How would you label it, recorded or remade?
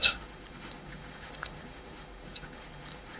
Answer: remade